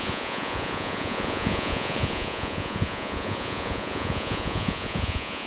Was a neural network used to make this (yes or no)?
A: yes